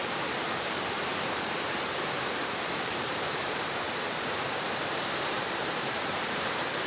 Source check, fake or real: fake